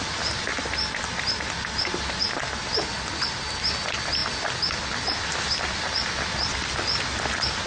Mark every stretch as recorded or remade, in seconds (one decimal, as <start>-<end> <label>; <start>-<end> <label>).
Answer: 0.0-7.7 recorded